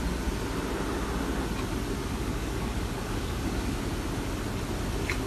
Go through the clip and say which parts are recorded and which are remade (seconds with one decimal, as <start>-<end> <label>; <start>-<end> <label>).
0.0-2.0 recorded; 2.0-3.8 remade; 3.8-5.3 recorded